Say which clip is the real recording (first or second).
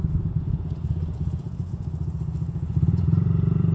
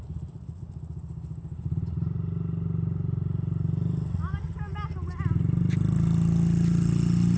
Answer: second